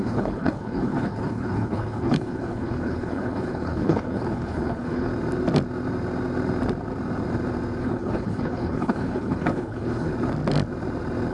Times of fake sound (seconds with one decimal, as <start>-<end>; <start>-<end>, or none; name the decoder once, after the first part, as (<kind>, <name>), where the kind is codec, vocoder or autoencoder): 0.0-5.1 (codec, HILCodec); 7.8-10.1

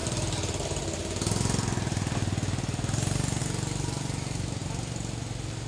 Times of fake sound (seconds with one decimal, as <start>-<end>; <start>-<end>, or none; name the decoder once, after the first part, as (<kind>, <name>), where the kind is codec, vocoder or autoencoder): none

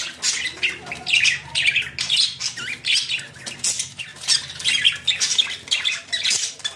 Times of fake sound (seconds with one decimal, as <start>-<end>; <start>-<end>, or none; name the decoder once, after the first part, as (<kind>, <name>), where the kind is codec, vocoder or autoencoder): none

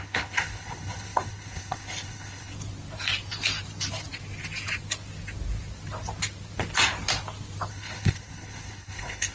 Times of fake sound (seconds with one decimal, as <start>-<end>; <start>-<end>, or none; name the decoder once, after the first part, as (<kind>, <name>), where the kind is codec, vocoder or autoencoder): 0.0-2.5 (codec, HILCodec); 7.7-9.3

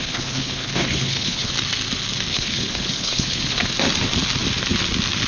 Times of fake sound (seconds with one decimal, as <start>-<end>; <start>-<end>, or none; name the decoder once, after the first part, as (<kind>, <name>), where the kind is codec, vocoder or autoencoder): 0.0-1.5 (codec, HILCodec); 2.3-3.7

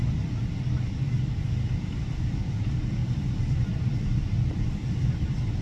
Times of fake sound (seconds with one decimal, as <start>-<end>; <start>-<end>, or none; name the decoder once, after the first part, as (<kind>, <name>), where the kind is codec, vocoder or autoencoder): none

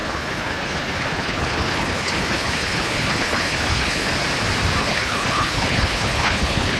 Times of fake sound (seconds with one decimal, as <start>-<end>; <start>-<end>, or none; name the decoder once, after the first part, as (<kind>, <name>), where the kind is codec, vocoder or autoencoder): 0.0-4.1 (codec, HILCodec); 4.8-6.8